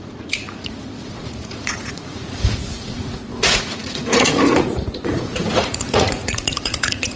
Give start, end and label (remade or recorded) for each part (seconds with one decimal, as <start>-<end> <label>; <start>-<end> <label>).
0.0-7.2 remade